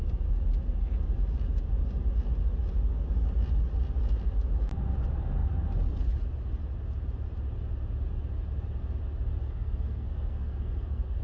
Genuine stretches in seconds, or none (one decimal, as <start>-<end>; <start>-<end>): 0.0-9.4